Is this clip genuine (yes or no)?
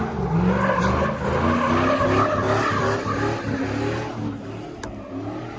yes